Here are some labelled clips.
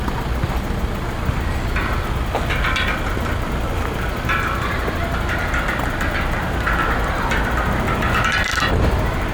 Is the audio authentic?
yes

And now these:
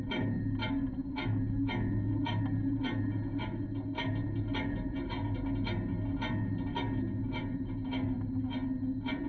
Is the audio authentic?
yes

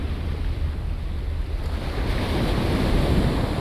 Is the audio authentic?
yes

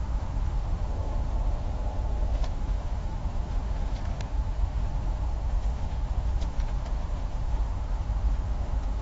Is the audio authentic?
no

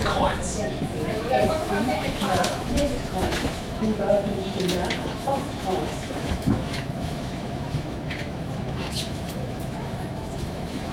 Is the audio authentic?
no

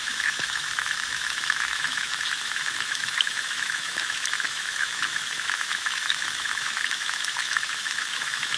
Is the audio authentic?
no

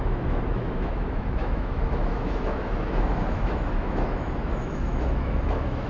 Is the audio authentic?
no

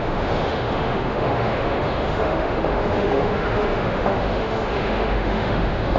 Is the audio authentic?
no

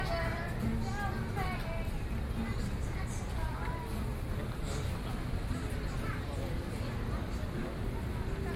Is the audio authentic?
yes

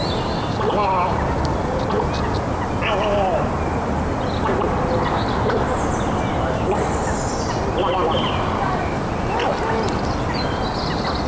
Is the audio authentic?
yes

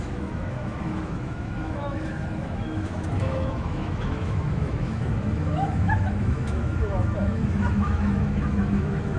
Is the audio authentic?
no